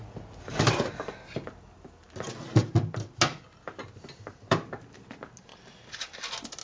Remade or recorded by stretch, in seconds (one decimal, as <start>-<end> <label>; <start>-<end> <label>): 0.0-6.6 recorded